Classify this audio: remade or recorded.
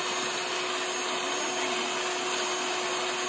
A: recorded